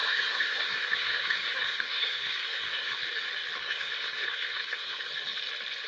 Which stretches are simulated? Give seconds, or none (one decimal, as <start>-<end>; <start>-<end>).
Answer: 0.0-3.0; 3.6-5.1